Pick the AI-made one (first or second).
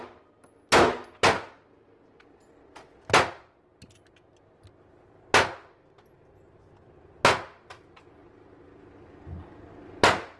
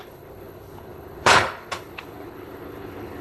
second